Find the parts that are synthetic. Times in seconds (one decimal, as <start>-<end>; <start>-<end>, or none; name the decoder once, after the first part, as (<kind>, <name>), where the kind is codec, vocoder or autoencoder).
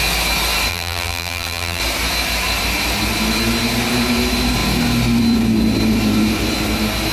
0.7-1.8 (vocoder, BigVGAN v2)